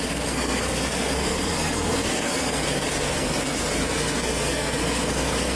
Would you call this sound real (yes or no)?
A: no